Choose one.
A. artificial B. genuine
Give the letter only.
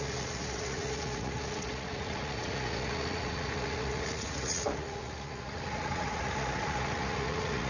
A